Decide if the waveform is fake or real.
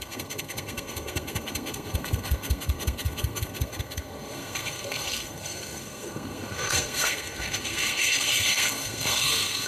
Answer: fake